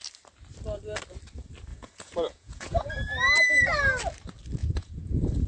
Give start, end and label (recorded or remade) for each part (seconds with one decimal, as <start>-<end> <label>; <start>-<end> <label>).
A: 0.0-1.7 recorded; 1.7-2.9 remade; 2.9-4.6 recorded; 4.6-5.5 remade